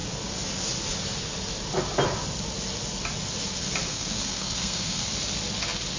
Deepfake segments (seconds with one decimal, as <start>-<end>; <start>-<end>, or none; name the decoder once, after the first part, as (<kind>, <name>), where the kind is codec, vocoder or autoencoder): 3.9-5.1 (codec, SNAC)